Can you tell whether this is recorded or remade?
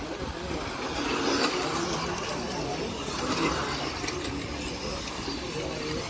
recorded